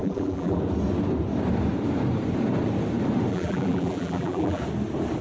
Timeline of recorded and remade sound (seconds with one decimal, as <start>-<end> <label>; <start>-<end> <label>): 0.0-0.6 remade; 0.6-3.3 recorded; 3.3-4.6 remade; 4.6-5.2 recorded